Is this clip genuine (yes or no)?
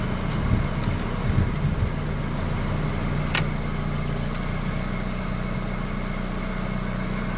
yes